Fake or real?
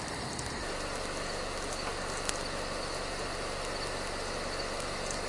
real